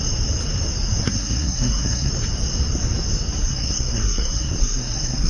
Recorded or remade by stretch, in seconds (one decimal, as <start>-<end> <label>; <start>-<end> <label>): 0.0-1.0 recorded; 1.0-2.1 remade; 2.1-3.4 recorded; 3.4-5.3 remade